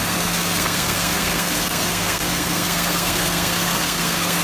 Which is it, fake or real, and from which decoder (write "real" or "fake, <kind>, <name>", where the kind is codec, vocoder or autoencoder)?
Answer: fake, codec, SNAC